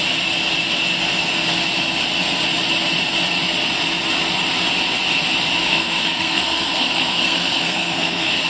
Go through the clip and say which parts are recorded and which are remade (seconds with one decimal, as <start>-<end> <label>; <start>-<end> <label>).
0.0-5.6 recorded; 5.6-8.5 remade